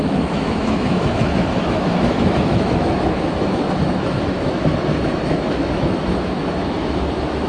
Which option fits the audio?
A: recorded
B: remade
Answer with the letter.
B